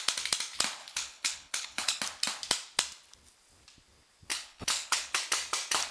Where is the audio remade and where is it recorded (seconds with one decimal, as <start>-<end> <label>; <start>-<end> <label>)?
0.0-0.8 recorded; 0.8-2.0 remade; 2.0-4.3 recorded; 4.3-5.2 remade; 5.2-5.9 recorded